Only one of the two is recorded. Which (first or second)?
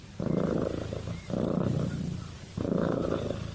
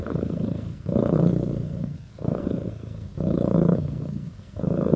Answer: first